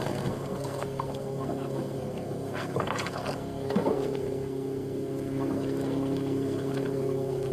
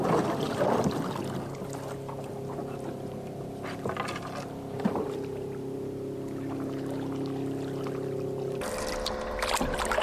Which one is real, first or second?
second